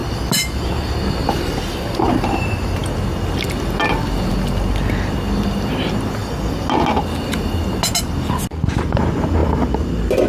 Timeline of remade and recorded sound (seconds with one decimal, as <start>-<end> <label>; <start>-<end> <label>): 0.0-10.3 recorded

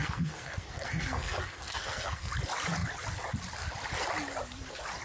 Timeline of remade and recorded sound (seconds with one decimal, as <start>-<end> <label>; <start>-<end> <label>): 0.0-2.3 remade; 2.3-5.0 recorded

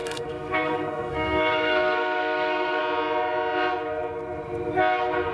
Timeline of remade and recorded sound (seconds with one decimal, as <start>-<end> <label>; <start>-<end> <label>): 0.0-2.8 remade; 2.8-5.3 recorded

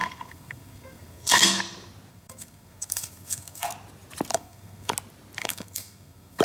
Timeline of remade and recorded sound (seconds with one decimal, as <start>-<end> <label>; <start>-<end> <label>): 0.0-1.6 remade; 1.6-2.1 recorded; 2.1-3.7 remade; 3.7-4.3 recorded; 4.3-4.9 remade; 4.9-5.4 recorded; 5.4-6.4 remade

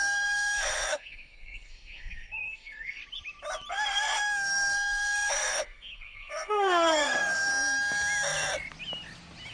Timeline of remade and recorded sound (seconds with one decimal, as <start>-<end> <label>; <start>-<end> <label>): 0.0-3.0 remade; 3.0-3.7 recorded; 3.7-7.5 remade; 7.5-9.5 recorded

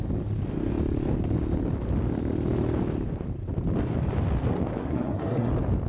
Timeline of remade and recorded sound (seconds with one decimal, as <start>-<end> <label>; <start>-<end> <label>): 0.0-4.8 recorded; 4.8-5.5 remade; 5.5-5.9 recorded